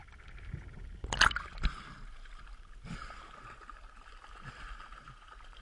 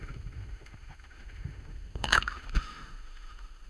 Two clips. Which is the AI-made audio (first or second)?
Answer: second